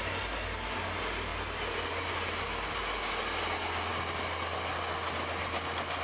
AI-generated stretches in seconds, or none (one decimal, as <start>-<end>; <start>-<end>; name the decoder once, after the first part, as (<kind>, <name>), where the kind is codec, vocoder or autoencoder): none